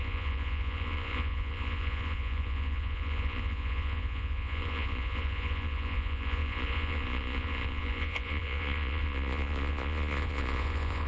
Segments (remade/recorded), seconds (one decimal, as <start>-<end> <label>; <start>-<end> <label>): 0.0-11.1 remade